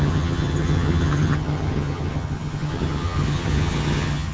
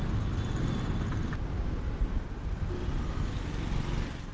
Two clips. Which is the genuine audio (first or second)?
second